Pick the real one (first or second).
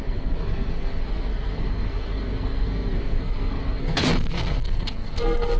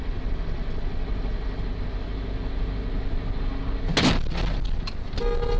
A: second